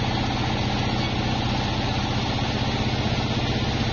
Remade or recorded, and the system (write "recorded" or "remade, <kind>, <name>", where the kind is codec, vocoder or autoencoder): recorded